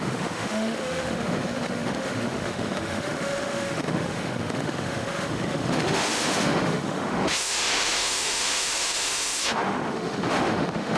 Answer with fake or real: fake